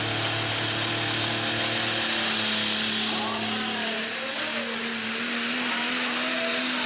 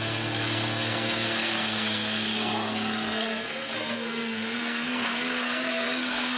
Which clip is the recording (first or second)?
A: first